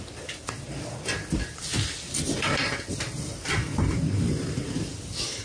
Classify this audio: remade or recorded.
remade